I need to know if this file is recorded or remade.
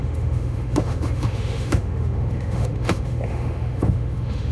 remade